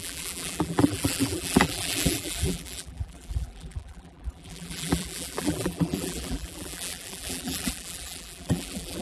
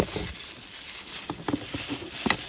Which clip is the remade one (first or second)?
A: first